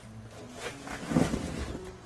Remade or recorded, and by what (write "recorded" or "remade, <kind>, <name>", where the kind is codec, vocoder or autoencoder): recorded